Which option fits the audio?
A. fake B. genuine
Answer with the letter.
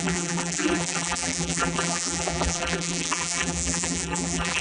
A